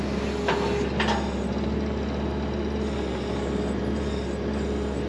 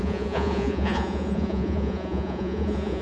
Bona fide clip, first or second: first